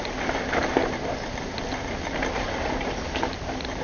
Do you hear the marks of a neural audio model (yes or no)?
no